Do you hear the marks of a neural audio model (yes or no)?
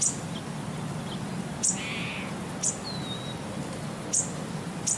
no